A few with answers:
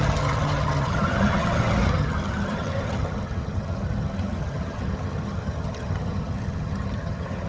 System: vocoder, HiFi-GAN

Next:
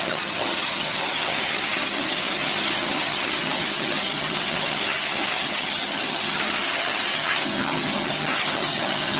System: vocoder, HiFi-GAN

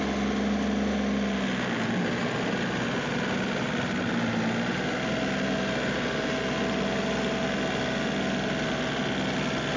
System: none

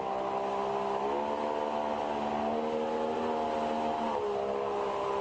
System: none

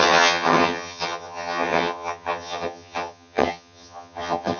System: vocoder, HiFi-GAN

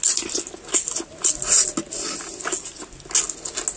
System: none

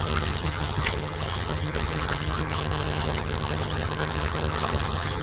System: vocoder, HiFi-GAN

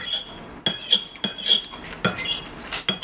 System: none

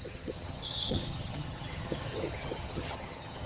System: vocoder, HiFi-GAN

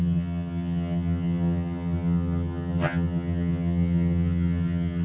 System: vocoder, HiFi-GAN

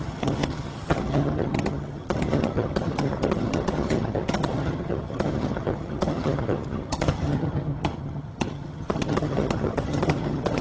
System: vocoder, HiFi-GAN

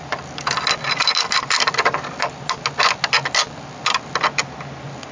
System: none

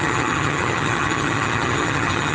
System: vocoder, HiFi-GAN